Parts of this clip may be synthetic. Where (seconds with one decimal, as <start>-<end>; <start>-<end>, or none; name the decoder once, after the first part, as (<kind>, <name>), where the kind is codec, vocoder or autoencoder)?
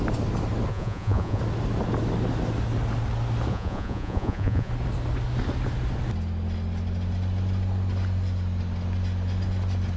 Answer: 0.7-1.4 (vocoder, Vocos); 3.5-4.7